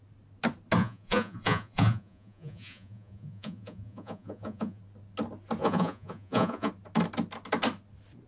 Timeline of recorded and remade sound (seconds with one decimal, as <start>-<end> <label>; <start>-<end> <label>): 0.0-0.8 recorded; 0.8-4.8 remade; 4.8-5.6 recorded; 5.6-6.7 remade; 6.7-8.3 recorded